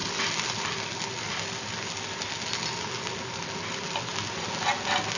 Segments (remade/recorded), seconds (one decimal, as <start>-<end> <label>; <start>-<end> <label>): 0.0-5.2 recorded